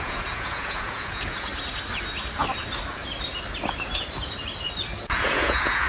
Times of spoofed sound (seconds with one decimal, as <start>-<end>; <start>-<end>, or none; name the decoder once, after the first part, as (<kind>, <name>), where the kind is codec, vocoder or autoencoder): 0.0-1.5 (vocoder, Vocos); 5.0-5.9